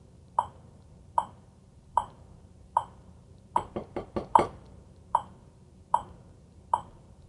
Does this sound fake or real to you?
fake